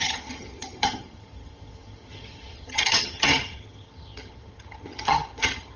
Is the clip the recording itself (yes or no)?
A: no